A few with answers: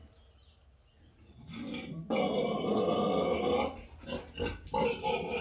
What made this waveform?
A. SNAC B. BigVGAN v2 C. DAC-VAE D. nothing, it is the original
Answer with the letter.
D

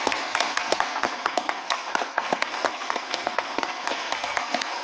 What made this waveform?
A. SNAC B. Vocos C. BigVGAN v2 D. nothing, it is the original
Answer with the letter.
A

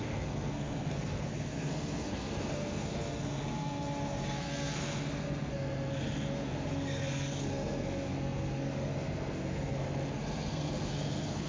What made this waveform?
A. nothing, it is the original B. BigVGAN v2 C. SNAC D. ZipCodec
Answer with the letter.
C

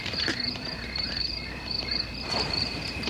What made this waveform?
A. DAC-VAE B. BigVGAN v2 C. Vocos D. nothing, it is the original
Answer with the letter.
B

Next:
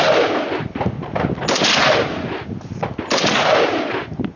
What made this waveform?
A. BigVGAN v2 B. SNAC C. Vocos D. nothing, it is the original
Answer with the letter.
D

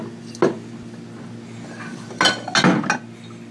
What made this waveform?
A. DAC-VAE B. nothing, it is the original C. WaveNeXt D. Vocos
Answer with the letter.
B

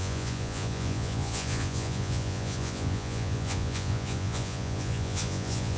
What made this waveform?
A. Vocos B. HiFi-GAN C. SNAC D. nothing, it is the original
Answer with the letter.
A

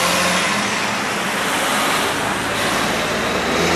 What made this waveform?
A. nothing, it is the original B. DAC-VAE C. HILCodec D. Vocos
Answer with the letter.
A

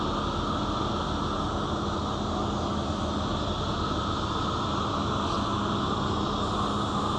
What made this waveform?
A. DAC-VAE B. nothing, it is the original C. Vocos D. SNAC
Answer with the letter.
B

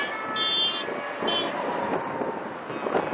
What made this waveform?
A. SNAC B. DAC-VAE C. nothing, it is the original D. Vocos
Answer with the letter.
C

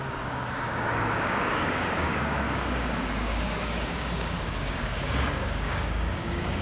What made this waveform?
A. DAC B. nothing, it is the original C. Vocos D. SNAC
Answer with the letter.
A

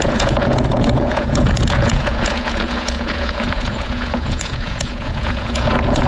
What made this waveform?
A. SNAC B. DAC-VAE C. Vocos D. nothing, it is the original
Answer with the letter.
C